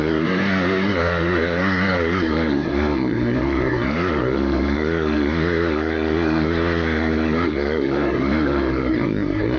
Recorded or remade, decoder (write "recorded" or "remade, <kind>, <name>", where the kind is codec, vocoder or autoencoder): remade, codec, SNAC